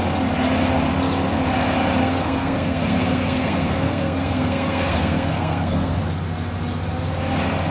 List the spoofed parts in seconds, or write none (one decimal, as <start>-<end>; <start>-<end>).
2.0-6.0